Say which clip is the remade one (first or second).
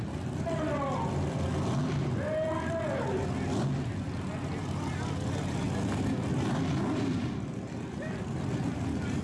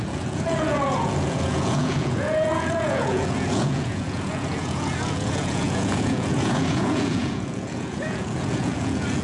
second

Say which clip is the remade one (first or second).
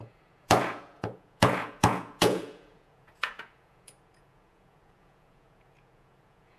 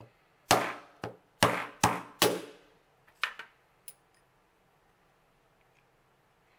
first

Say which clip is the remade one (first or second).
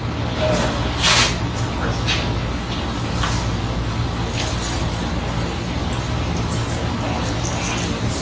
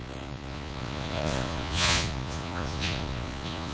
second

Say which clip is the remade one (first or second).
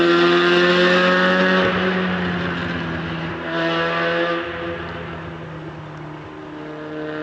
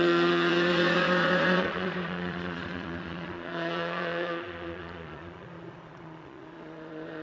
second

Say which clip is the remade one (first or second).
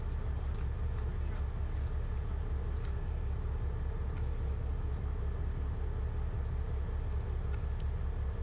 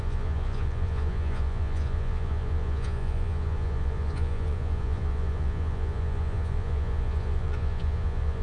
second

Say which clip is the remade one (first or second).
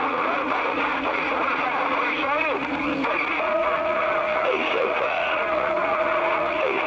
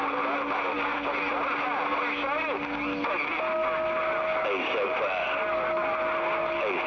first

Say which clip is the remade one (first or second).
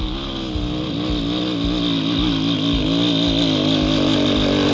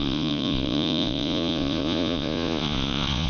second